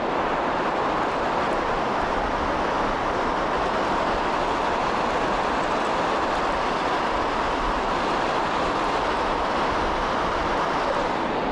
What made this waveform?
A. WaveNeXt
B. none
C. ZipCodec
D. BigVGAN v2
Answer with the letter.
B